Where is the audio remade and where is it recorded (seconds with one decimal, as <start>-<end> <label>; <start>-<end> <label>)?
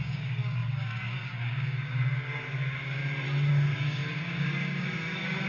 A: 0.0-3.0 remade; 3.0-3.5 recorded; 3.5-5.5 remade